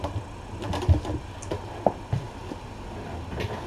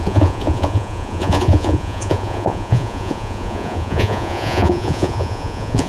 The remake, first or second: second